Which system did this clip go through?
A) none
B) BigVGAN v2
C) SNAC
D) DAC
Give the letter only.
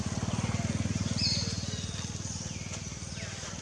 A